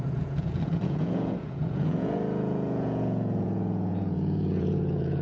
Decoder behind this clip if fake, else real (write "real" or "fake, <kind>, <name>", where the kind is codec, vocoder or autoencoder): fake, vocoder, Vocos